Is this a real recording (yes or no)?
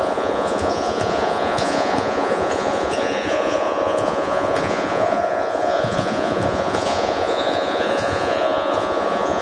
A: no